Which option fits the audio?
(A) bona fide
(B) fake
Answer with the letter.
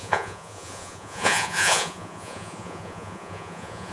B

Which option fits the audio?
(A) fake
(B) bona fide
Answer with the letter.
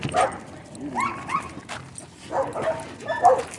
B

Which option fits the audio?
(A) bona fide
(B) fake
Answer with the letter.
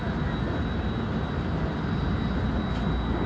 A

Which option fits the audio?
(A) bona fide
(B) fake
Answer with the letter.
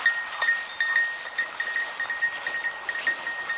A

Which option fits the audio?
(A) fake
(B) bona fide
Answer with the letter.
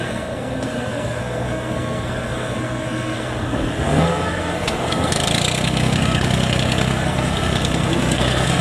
A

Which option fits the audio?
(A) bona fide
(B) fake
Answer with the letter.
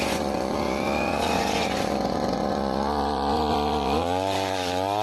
B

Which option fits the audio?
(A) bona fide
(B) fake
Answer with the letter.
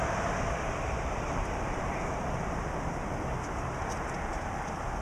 A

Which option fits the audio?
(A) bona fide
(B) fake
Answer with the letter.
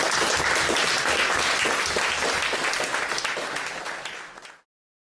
A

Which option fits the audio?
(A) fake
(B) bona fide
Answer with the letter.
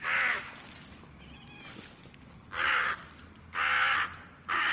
B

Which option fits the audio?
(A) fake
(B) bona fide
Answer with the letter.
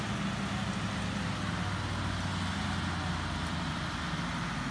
B